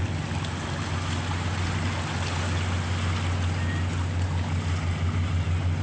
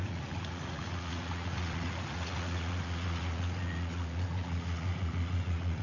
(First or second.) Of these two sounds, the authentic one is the first